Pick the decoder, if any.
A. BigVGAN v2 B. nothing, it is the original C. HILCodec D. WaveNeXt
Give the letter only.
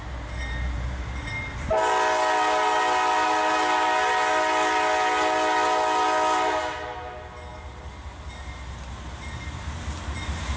B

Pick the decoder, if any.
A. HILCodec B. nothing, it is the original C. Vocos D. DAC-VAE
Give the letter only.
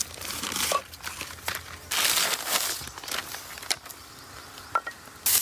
B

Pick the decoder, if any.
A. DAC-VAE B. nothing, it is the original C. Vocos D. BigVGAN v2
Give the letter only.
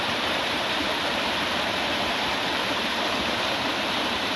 D